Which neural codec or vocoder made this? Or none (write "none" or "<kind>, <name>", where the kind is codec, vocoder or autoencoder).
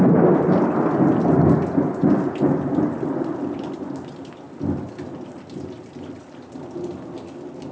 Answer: none